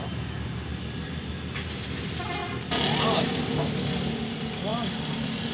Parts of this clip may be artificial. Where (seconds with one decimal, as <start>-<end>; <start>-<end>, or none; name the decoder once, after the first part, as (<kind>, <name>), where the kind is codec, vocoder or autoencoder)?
0.7-1.3 (vocoder, BigVGAN v2)